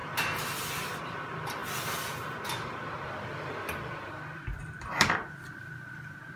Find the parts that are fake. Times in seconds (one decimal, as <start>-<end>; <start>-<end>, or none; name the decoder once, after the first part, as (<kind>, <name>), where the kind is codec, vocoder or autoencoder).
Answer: 1.0-6.4 (vocoder, BigVGAN v2)